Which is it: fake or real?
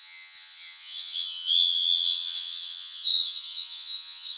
fake